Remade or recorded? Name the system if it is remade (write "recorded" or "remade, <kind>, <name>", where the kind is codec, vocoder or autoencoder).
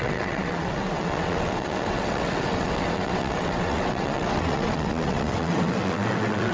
remade, vocoder, WaveNeXt